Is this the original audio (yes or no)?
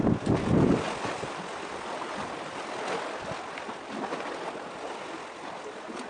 yes